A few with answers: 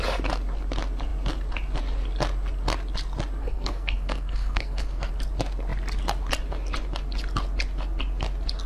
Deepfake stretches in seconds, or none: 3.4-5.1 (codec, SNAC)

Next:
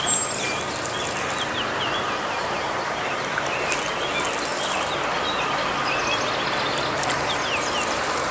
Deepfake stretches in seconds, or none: none

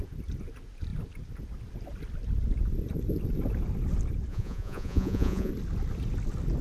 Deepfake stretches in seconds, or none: 4.3-5.5 (vocoder, Vocos)

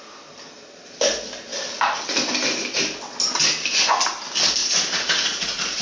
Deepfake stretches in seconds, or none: 4.6-5.8 (vocoder, Vocos)

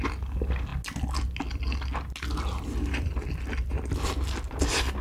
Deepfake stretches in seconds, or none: none

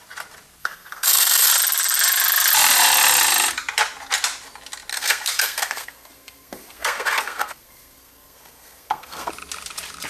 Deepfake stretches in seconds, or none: 0.6-1.5 (codec, SNAC); 4.9-9.3